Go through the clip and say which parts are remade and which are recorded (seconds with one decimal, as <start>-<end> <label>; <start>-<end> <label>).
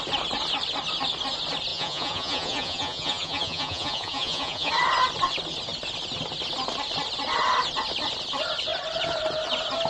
0.0-1.7 recorded; 1.7-4.7 remade; 4.7-9.9 recorded